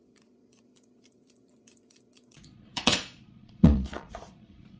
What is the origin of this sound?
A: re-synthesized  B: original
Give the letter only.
A